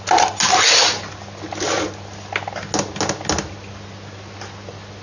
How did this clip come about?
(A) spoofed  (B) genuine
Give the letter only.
B